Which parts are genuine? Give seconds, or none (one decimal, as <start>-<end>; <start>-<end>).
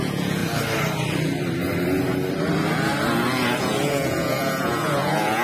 0.4-3.6